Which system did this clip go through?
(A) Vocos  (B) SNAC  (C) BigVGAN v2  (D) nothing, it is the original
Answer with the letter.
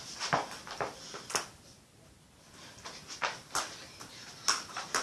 D